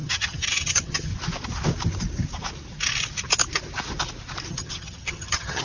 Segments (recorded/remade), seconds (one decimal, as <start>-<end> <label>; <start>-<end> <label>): 0.0-1.1 remade; 1.1-4.5 recorded; 4.5-5.6 remade